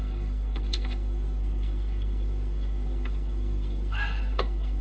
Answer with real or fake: fake